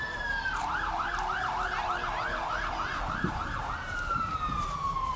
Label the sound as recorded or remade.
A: remade